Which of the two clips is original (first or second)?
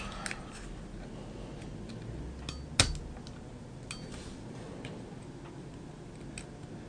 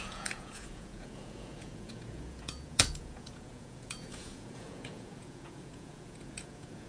first